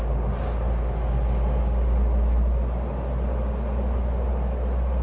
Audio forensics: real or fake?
real